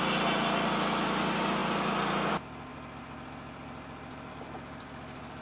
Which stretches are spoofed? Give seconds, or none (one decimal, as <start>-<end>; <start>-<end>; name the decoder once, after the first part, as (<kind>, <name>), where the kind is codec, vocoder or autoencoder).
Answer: none